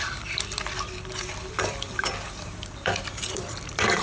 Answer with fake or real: fake